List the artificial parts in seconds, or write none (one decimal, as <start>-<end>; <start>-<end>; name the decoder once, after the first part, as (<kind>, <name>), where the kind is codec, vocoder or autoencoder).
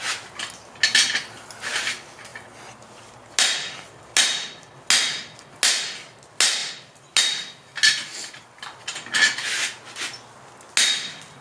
none